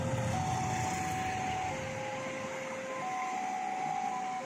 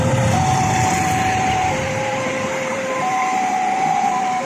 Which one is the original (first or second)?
first